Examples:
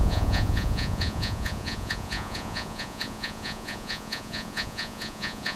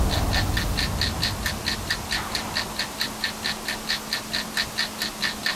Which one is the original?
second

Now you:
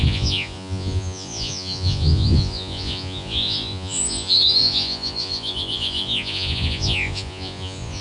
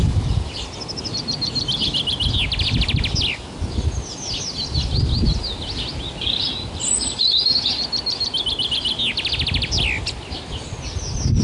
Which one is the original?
second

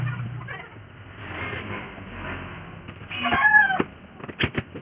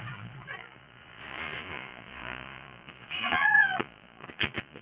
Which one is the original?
first